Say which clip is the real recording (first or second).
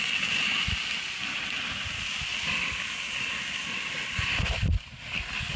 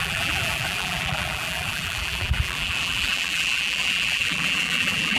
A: first